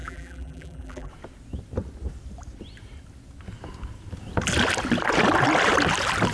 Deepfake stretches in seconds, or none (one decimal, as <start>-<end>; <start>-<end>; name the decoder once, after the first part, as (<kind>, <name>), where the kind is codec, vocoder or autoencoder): 0.0-1.1 (vocoder, BigVGAN v2)